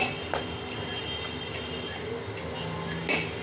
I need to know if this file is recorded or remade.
recorded